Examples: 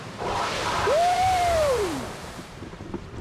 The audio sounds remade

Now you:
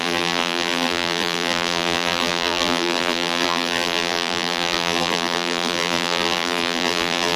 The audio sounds remade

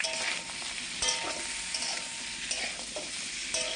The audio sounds recorded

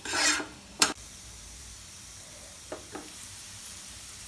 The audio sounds remade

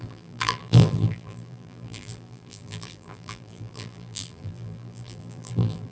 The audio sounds remade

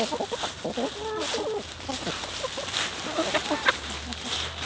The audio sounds recorded